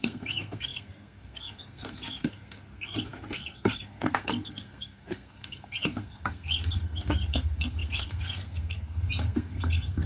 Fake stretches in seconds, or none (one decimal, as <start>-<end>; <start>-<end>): 0.0-10.1